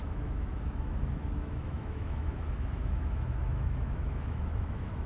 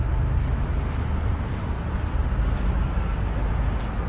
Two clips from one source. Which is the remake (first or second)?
first